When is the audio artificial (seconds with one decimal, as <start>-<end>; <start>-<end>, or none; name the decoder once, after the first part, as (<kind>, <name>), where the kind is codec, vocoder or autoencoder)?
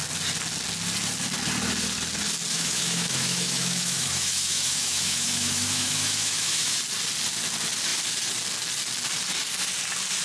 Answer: 2.5-6.8 (autoencoder, DAC-VAE)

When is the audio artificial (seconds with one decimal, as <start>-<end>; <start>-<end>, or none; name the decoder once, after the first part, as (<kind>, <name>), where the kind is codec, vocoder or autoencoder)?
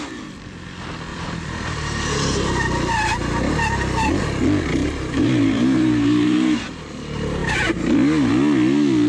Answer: 1.1-2.1 (vocoder, BigVGAN v2); 4.8-6.8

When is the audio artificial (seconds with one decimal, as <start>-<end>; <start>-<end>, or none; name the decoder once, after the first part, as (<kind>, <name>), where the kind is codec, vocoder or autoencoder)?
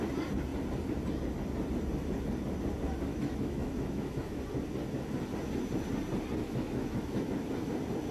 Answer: 3.1-4.4 (autoencoder, DAC-VAE); 6.4-7.3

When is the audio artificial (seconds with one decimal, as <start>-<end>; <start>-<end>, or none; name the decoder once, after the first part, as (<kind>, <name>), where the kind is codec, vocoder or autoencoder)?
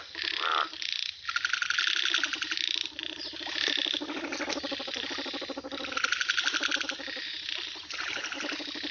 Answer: none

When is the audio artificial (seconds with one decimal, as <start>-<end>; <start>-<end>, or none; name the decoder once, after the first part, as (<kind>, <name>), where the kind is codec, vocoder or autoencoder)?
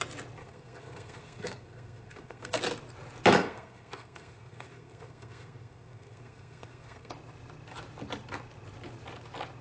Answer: 0.4-2.6 (codec, SNAC); 3.4-7.1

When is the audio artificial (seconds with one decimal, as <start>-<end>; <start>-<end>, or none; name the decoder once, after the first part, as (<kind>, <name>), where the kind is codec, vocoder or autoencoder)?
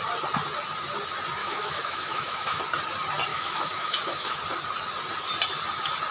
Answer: 1.4-2.6 (autoencoder, DAC-VAE); 3.3-4.4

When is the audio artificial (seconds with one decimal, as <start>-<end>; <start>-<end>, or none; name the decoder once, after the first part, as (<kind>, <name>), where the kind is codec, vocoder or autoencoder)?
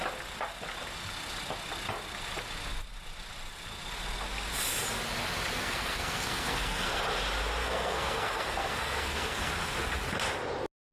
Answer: 5.6-7.0 (codec, SNAC); 7.6-9.5